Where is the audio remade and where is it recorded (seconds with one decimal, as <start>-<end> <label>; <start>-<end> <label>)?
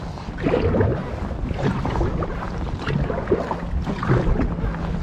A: 0.0-5.0 recorded